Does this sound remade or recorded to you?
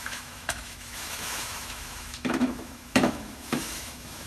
remade